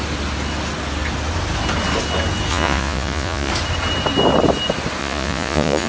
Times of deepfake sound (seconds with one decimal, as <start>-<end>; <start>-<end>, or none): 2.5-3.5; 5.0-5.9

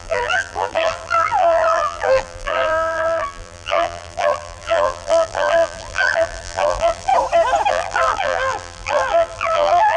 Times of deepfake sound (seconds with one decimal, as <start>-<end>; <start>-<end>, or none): 0.0-7.1; 7.7-10.0

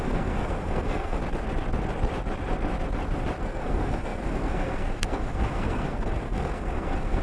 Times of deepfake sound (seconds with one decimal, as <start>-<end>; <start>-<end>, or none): 0.0-1.2; 3.4-7.2